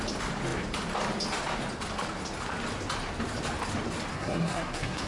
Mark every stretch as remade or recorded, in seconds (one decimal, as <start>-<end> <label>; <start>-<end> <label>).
0.0-4.1 recorded; 4.1-5.1 remade